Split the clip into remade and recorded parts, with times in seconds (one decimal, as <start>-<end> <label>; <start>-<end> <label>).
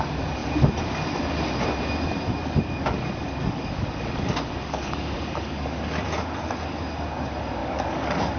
0.0-2.4 recorded; 2.4-5.8 remade; 5.8-7.6 recorded; 7.6-8.4 remade